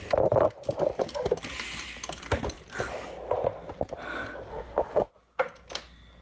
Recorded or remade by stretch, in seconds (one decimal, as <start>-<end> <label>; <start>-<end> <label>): 0.0-4.5 recorded; 4.5-5.1 remade; 5.1-6.2 recorded

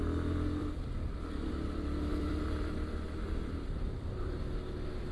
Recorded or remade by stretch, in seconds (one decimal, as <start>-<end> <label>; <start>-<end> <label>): 0.0-0.6 recorded; 0.6-1.5 remade; 1.5-2.1 recorded; 2.1-5.1 remade

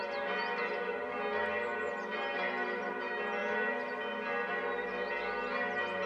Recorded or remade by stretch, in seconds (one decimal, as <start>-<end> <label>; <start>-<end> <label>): 0.0-6.1 recorded

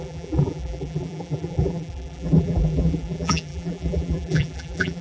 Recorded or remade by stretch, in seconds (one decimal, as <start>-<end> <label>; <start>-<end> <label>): 0.0-5.0 remade

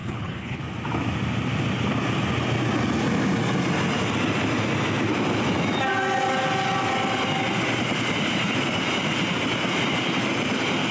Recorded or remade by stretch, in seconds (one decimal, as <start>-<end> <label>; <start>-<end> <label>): 0.0-0.6 remade; 0.6-10.9 recorded

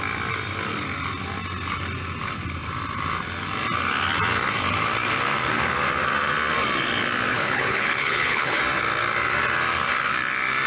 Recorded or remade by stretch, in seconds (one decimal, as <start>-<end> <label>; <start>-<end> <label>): 0.0-7.3 recorded; 7.3-8.6 remade; 8.6-10.7 recorded